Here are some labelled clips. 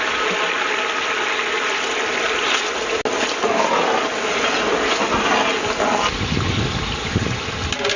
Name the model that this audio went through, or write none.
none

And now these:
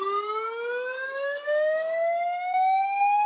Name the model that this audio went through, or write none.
codec, DAC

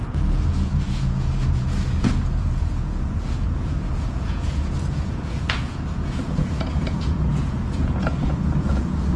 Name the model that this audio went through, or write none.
vocoder, Vocos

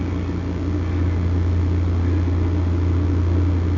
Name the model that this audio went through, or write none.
none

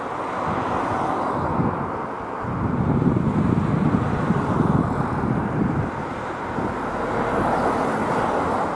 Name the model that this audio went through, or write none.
none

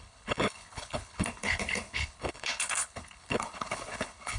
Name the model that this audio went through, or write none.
codec, HILCodec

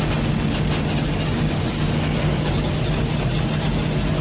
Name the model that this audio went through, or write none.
none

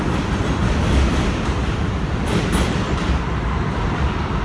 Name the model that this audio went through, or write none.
none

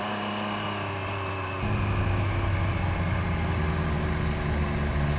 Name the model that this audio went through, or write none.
none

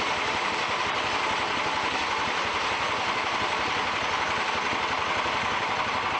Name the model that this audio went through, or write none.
vocoder, BigVGAN v2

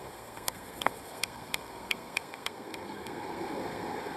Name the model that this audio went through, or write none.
codec, SNAC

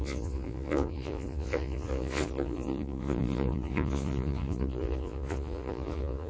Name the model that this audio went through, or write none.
vocoder, Vocos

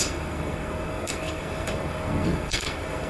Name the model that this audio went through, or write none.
codec, SNAC